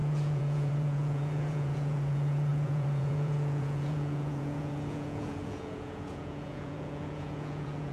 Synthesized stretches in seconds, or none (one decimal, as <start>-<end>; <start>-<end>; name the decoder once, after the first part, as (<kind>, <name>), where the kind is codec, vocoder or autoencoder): 0.0-7.9 (vocoder, Vocos)